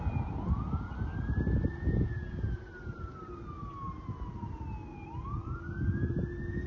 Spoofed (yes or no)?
no